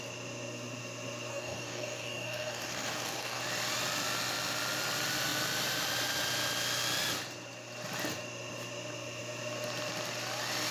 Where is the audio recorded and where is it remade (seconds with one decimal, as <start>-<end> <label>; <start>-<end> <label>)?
0.0-1.3 recorded; 1.3-3.4 remade; 3.4-10.7 recorded